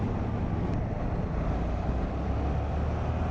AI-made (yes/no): no